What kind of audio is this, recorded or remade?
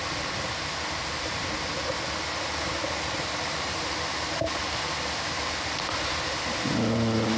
recorded